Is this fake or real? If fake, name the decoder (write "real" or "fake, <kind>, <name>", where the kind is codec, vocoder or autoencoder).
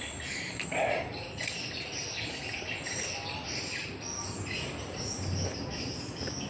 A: real